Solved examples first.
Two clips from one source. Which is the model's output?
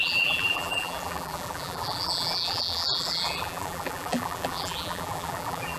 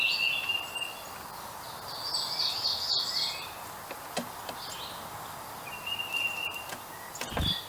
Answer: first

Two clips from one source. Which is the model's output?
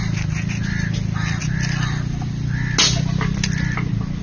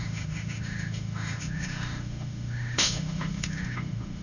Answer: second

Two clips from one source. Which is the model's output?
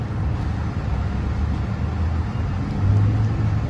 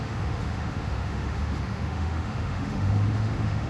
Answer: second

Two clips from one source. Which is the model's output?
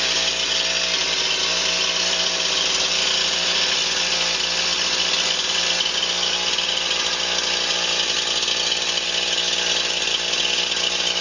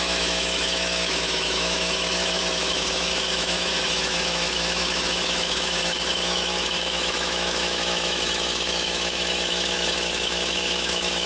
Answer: second